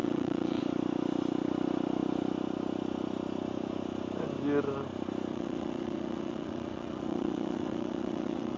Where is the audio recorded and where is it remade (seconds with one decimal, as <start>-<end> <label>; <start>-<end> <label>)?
0.0-0.6 remade; 0.6-5.3 recorded; 5.3-8.6 remade